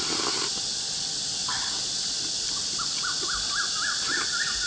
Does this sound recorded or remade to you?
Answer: recorded